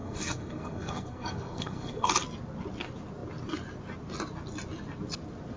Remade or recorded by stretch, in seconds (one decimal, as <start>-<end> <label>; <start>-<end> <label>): 0.0-2.1 remade; 2.1-5.6 recorded

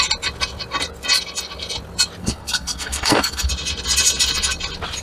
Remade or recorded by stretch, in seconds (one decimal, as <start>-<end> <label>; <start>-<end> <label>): 0.0-2.2 recorded; 2.2-3.5 remade; 3.5-5.0 recorded

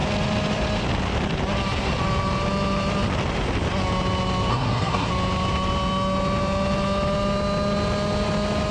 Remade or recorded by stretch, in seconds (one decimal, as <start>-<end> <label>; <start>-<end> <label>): 0.0-4.5 recorded; 4.5-5.1 remade; 5.1-8.7 recorded

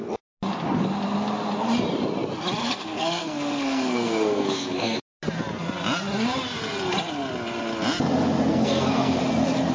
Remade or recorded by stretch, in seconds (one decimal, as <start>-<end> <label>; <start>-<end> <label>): 0.0-2.6 recorded; 2.6-5.0 remade; 5.0-8.5 recorded; 8.5-9.2 remade; 9.2-9.7 recorded

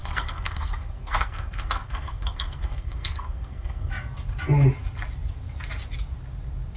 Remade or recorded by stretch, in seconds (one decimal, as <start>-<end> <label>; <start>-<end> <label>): 0.0-3.9 remade; 3.9-6.8 recorded

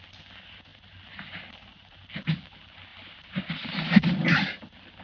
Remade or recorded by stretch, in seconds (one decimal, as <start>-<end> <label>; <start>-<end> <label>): 0.0-5.0 recorded

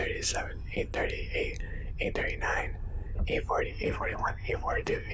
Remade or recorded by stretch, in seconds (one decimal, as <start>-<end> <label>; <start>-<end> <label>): 0.0-3.7 recorded; 3.7-5.1 remade

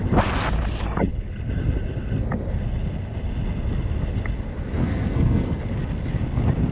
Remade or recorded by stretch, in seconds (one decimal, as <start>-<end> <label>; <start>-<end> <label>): 0.0-4.8 recorded; 4.8-5.6 remade; 5.6-6.7 recorded